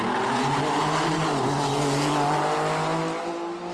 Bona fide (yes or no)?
yes